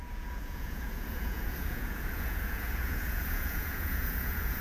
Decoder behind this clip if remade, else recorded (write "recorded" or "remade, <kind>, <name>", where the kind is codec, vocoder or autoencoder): remade, vocoder, Vocos